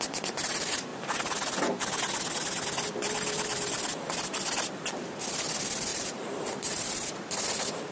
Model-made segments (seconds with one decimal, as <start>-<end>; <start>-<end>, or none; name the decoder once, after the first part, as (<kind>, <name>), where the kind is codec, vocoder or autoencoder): 5.9-6.8 (vocoder, BigVGAN v2)